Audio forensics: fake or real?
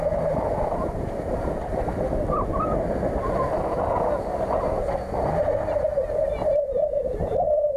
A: real